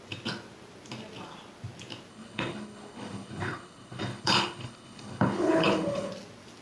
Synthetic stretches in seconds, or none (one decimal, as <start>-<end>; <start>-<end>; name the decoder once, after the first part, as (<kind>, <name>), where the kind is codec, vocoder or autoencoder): 2.1-6.1 (codec, HILCodec)